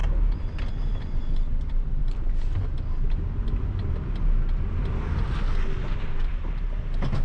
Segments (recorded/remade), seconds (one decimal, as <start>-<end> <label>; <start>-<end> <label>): 0.0-7.2 recorded

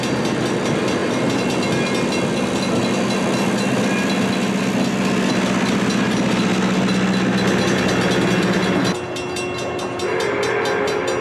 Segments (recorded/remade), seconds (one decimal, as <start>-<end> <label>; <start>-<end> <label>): 0.0-11.2 recorded